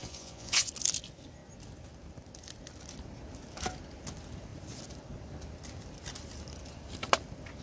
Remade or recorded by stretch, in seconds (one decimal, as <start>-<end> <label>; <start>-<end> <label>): 0.0-0.7 remade; 0.7-7.6 recorded